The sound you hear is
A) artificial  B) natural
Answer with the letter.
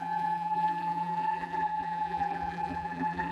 A